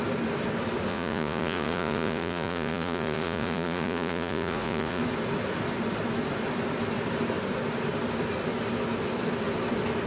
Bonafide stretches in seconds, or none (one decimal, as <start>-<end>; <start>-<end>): 0.0-0.9; 5.0-10.1